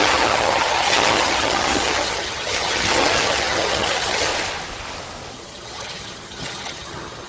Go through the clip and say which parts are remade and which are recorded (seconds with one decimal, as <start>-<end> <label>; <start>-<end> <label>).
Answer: 0.0-4.3 remade; 4.3-5.3 recorded; 5.3-7.3 remade